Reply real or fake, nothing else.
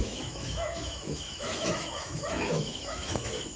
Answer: fake